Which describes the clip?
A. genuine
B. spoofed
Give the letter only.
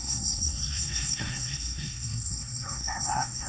B